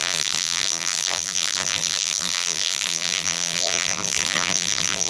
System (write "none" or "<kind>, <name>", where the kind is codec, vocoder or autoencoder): vocoder, BigVGAN v2